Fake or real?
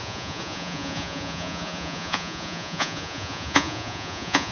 fake